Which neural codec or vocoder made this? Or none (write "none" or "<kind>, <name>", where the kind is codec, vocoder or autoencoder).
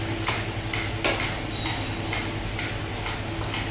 none